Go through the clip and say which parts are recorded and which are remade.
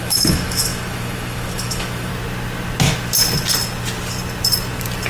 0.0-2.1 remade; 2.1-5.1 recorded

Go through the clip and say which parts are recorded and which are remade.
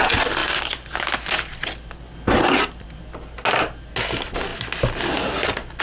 0.0-5.8 recorded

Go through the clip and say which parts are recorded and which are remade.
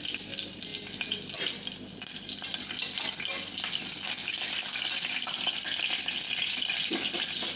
0.0-7.6 recorded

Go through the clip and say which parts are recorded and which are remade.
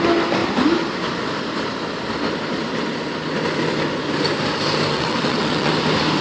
0.0-4.9 recorded; 4.9-5.7 remade; 5.7-6.2 recorded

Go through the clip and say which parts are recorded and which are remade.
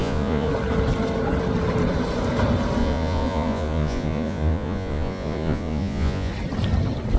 0.0-0.5 remade; 0.5-2.8 recorded; 2.8-6.3 remade; 6.3-7.2 recorded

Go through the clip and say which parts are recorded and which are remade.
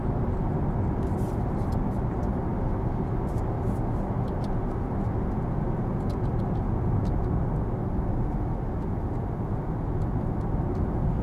0.0-11.2 recorded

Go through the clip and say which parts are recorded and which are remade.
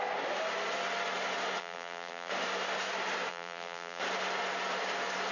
0.0-1.6 recorded; 1.6-2.3 remade; 2.3-3.3 recorded; 3.3-4.0 remade; 4.0-5.3 recorded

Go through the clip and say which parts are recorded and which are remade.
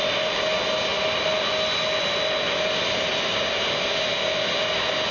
0.0-5.1 recorded